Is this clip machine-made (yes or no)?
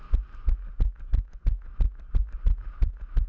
no